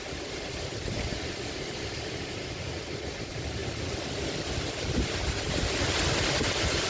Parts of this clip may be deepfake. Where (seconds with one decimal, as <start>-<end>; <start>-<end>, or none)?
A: none

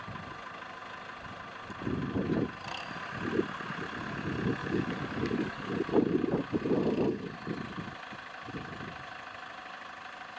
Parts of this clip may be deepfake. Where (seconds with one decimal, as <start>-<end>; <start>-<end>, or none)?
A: 4.6-5.7

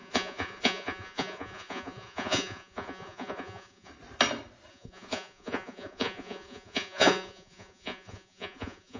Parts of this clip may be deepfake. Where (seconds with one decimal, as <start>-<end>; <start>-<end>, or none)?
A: 0.0-3.9; 4.7-9.0

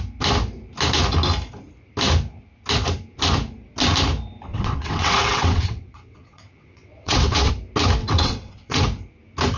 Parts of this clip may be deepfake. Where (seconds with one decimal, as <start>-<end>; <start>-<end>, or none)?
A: 4.5-7.5; 8.0-8.8

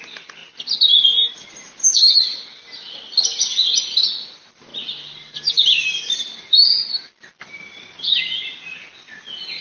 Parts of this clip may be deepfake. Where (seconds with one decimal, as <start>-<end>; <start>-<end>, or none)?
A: none

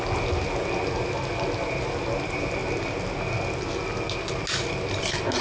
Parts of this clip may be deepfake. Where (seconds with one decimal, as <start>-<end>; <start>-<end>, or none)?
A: none

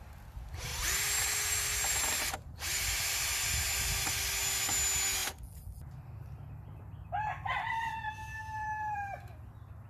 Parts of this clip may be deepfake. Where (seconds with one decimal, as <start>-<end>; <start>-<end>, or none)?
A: 0.7-2.9; 8.6-9.4